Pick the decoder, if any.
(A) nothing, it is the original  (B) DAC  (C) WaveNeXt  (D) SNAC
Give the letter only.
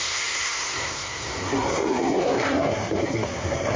D